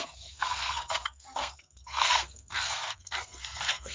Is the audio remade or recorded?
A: remade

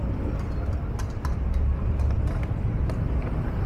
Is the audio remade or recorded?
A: recorded